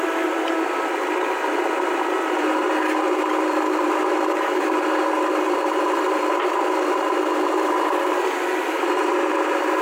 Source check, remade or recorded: remade